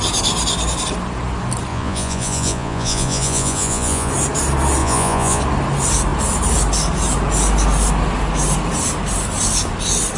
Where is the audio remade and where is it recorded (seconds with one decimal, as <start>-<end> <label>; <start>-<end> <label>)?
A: 0.0-1.7 recorded; 1.7-4.1 remade; 4.1-4.8 recorded; 4.8-5.4 remade; 5.4-10.2 recorded